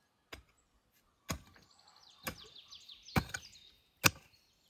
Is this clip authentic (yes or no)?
yes